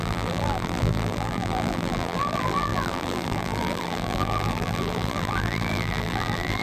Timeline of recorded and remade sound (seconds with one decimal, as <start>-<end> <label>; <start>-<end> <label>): 0.0-6.6 remade